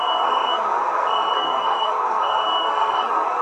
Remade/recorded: remade